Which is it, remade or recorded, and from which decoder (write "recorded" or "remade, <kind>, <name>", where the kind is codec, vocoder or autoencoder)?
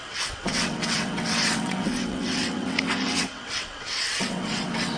remade, vocoder, WaveNeXt